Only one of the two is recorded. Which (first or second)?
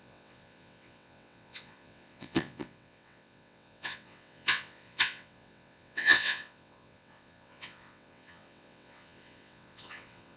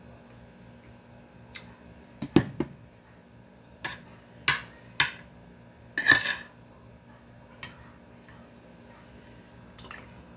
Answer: second